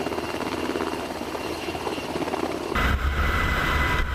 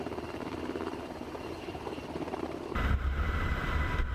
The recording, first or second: first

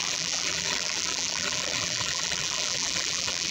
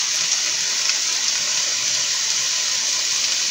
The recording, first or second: second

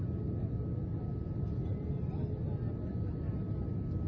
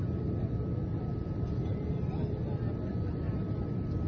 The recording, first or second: first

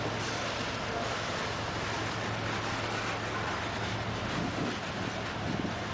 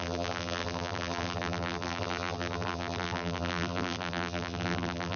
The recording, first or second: first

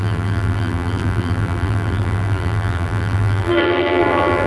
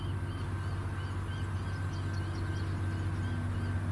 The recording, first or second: second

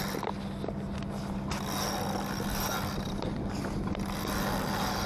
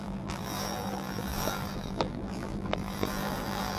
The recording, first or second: first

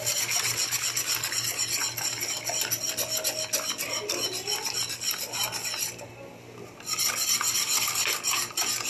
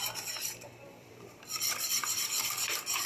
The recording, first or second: first